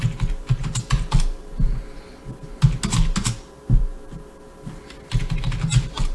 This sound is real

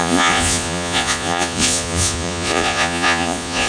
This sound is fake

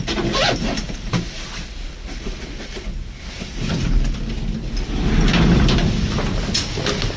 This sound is real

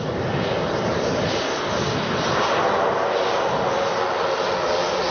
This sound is real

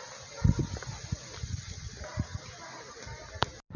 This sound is real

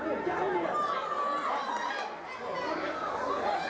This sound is real